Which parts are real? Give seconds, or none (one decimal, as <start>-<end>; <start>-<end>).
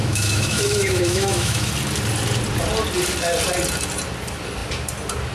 1.7-5.3